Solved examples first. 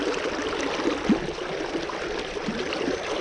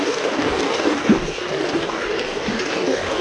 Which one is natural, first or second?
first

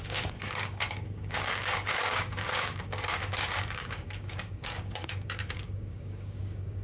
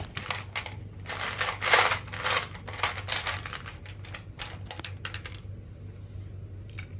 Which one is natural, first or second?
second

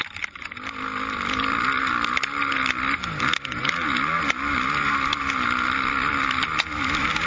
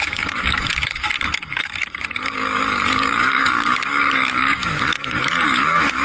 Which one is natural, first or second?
first